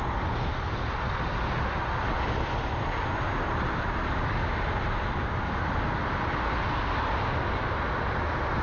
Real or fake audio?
real